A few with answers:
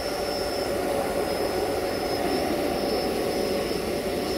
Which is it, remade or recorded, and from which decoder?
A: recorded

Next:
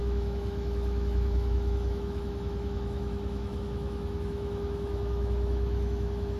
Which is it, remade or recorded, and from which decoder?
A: remade, autoencoder, DAC-VAE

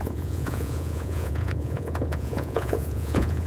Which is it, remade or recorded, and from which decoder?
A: remade, vocoder, Vocos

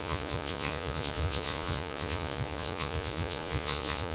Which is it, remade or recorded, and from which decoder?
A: remade, vocoder, Vocos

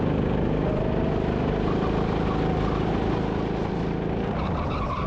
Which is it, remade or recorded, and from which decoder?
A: recorded